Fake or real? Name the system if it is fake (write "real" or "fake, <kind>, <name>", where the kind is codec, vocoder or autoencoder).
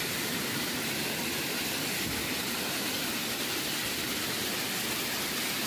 real